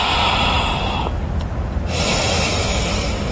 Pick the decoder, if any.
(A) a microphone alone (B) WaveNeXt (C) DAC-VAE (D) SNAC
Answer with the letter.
A